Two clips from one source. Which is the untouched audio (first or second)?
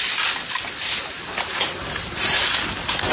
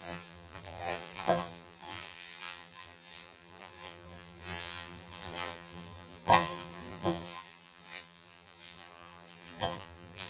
first